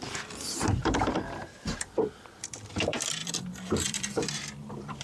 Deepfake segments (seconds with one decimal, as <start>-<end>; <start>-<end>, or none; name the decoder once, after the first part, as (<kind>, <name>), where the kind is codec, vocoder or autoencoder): 0.0-5.0 (vocoder, BigVGAN v2)